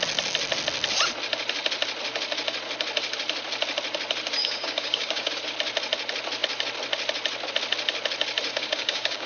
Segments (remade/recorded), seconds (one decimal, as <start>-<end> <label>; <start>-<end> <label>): 0.0-4.4 recorded; 4.4-5.3 remade; 5.3-8.5 recorded; 8.5-9.3 remade